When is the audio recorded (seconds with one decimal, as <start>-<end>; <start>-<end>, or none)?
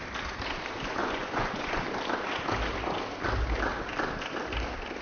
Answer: 0.0-1.0; 1.8-5.0